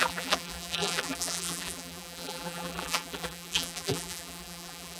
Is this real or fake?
fake